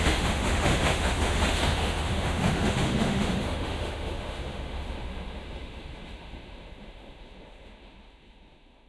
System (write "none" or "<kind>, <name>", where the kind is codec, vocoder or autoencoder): autoencoder, DAC-VAE